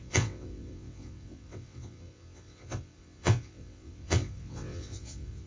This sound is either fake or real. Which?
fake